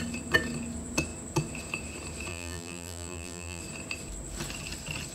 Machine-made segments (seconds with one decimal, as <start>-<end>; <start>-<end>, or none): 2.3-3.6